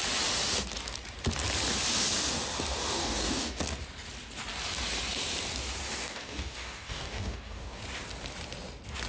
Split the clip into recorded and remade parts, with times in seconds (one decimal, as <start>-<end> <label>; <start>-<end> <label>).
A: 0.0-3.0 recorded; 3.0-3.6 remade; 3.6-6.0 recorded; 6.0-7.8 remade; 7.8-9.1 recorded